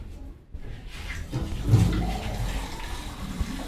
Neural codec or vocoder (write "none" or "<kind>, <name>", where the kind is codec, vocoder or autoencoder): none